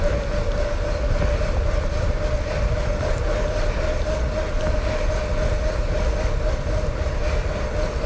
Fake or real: real